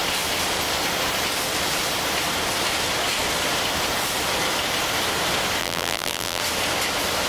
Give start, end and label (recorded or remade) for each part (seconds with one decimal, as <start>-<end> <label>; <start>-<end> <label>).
0.0-5.6 recorded; 5.6-6.4 remade; 6.4-7.3 recorded